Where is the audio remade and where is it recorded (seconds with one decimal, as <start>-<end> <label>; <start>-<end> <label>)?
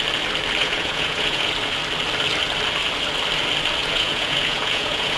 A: 0.0-0.6 recorded; 0.6-1.5 remade; 1.5-3.8 recorded; 3.8-5.2 remade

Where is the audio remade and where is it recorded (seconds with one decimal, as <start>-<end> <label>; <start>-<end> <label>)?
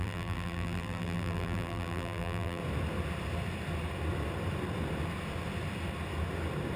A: 0.0-2.6 remade; 2.6-6.8 recorded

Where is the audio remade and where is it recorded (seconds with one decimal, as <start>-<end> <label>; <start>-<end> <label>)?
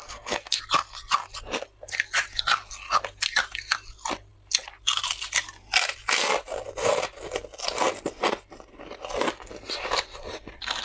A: 0.0-0.6 remade; 0.6-10.8 recorded